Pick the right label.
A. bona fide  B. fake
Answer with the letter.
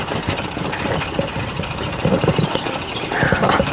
A